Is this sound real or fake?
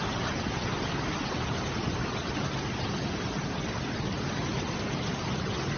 real